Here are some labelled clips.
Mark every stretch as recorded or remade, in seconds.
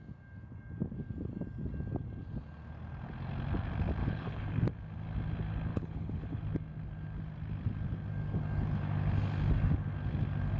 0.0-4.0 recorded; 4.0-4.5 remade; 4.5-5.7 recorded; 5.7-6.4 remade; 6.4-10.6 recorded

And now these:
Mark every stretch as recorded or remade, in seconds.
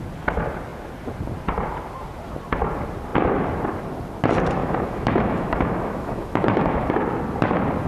0.0-4.6 recorded; 4.6-6.9 remade; 6.9-7.9 recorded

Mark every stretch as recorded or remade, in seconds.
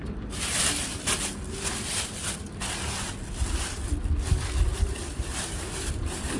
0.0-4.7 recorded; 4.7-6.4 remade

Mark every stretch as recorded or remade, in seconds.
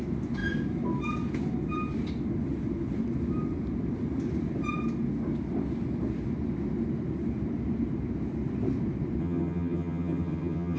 0.0-9.2 recorded; 9.2-10.8 remade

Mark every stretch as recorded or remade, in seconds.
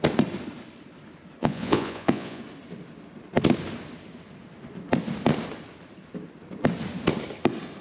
0.0-1.4 recorded; 1.4-2.4 remade; 2.4-7.8 recorded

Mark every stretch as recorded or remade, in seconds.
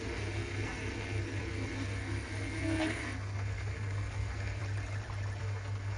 0.0-4.6 remade; 4.6-5.4 recorded; 5.4-6.0 remade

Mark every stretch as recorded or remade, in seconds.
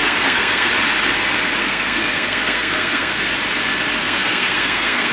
0.0-0.7 remade; 0.7-1.6 recorded; 1.6-3.3 remade; 3.3-4.0 recorded; 4.0-5.1 remade